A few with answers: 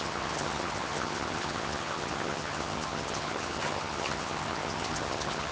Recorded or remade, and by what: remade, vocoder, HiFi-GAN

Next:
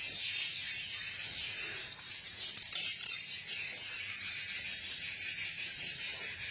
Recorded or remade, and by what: remade, vocoder, BigVGAN v2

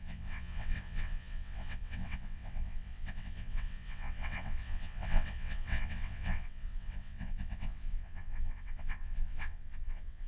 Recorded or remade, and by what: remade, vocoder, WaveNeXt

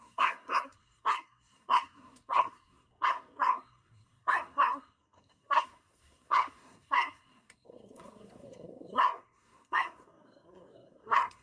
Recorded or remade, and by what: remade, codec, SNAC